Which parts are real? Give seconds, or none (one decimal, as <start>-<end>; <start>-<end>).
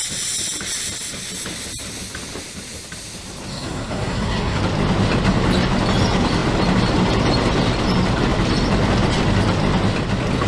0.0-3.5; 4.6-10.5